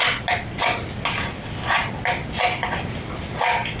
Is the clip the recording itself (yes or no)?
yes